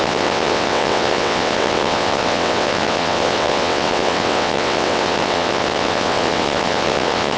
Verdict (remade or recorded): remade